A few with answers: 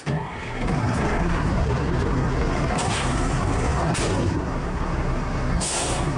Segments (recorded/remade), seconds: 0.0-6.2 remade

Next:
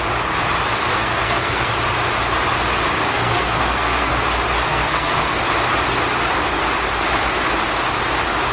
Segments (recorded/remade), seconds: 0.0-0.9 recorded; 0.9-1.7 remade; 1.7-3.1 recorded; 3.1-4.1 remade; 4.1-4.7 recorded; 4.7-5.4 remade; 5.4-8.5 recorded

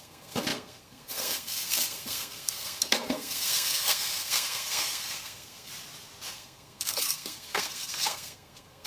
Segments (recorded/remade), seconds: 0.0-5.7 remade; 5.7-6.3 recorded; 6.3-8.9 remade

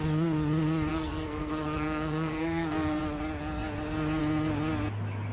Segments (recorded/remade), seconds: 0.0-0.9 recorded; 0.9-3.0 remade; 3.0-5.3 recorded

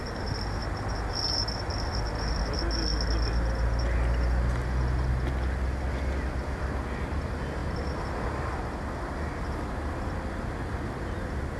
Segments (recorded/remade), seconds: 0.0-11.6 recorded

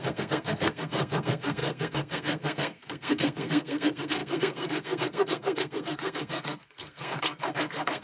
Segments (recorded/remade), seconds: 0.0-8.0 remade

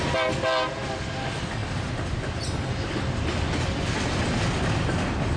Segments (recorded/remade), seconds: 0.0-5.4 recorded